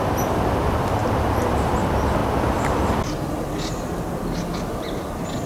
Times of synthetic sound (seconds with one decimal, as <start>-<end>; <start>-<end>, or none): none